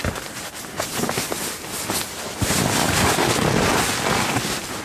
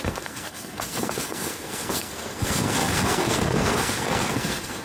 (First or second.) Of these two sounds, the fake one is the second